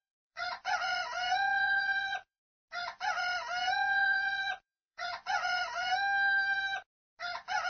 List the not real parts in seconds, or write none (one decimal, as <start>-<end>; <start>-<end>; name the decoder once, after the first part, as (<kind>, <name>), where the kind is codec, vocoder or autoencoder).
0.0-2.4 (vocoder, Vocos); 3.6-5.9